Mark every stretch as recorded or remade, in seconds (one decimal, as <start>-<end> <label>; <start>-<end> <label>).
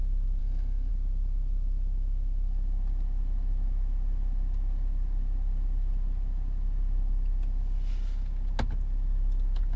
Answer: 0.0-0.4 recorded; 0.4-0.9 remade; 0.9-9.8 recorded